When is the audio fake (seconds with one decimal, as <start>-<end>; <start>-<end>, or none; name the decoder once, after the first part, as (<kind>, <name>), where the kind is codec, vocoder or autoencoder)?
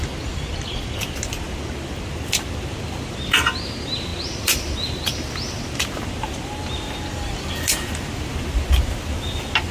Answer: none